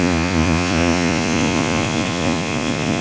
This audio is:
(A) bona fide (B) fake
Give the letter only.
B